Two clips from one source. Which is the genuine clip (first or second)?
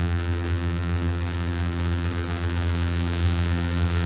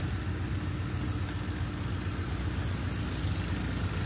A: second